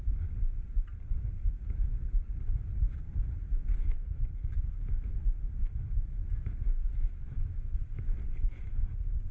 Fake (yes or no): no